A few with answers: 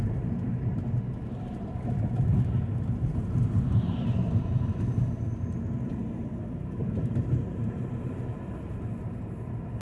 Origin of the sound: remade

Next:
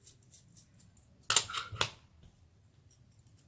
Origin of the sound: recorded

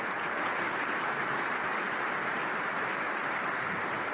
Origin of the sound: remade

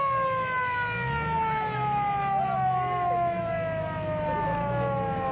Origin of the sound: recorded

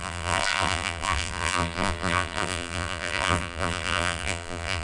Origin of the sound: remade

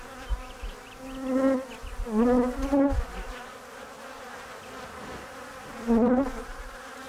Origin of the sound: recorded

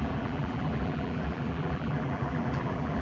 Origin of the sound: remade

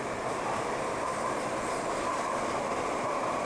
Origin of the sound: remade